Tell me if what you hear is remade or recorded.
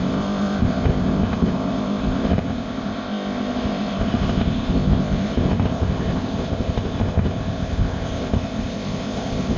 remade